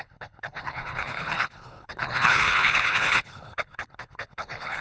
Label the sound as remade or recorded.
remade